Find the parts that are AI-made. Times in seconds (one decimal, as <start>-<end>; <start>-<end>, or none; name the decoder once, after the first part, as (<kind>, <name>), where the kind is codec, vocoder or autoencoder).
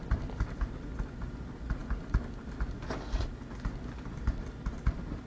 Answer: none